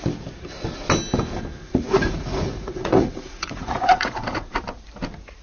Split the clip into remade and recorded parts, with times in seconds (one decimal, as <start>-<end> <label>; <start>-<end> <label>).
0.0-1.6 recorded; 1.6-4.6 remade; 4.6-5.4 recorded